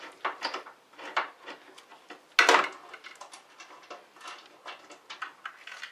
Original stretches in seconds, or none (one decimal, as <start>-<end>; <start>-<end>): 0.0-5.9